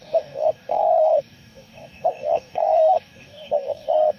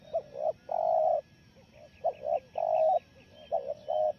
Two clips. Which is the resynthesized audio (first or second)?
first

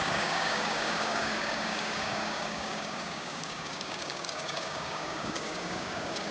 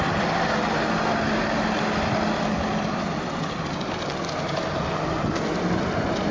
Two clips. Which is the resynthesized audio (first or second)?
first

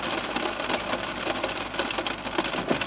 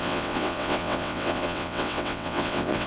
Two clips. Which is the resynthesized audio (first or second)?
second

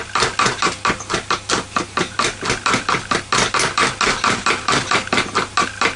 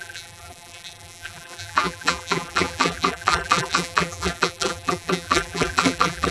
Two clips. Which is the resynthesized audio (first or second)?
second